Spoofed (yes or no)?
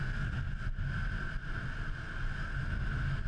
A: no